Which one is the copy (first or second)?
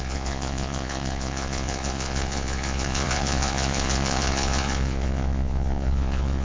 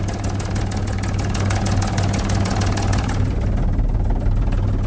first